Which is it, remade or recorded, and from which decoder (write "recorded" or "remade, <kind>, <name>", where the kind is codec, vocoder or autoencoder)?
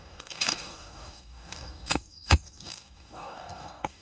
remade, codec, DAC